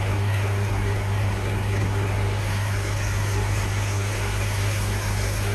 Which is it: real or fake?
fake